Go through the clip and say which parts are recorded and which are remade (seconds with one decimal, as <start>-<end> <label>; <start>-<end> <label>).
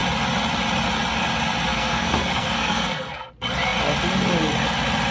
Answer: 0.0-1.7 recorded; 1.7-3.3 remade; 3.3-5.1 recorded